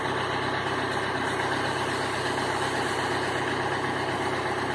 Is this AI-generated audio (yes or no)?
no